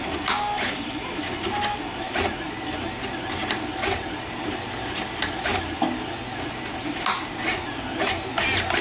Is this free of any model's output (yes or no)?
yes